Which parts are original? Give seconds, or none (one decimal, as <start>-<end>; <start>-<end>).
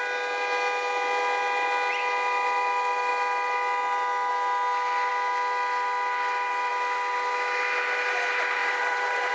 0.0-8.6